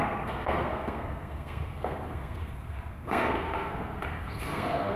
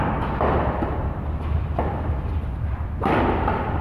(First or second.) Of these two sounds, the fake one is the first